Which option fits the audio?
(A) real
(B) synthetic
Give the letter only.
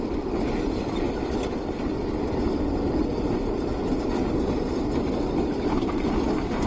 A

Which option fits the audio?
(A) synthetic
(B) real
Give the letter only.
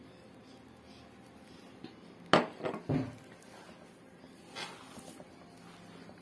B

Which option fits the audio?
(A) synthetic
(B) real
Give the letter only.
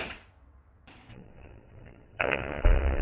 A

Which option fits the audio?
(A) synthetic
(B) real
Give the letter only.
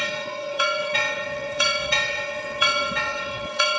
A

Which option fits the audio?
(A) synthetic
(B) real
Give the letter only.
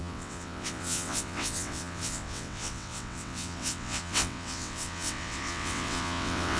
A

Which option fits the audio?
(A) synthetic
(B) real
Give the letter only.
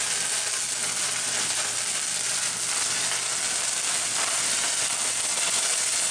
B